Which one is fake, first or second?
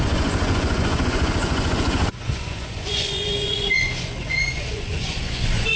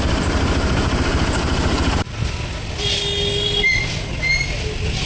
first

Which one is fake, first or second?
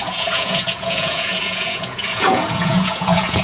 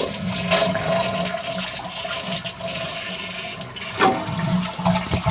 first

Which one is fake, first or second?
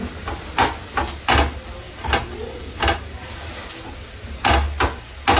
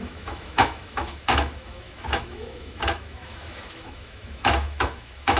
second